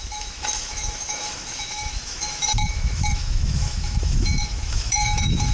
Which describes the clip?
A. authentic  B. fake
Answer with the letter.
B